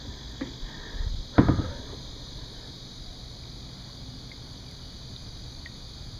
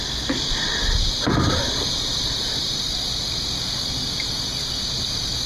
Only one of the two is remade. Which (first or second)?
second